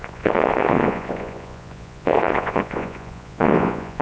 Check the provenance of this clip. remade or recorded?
remade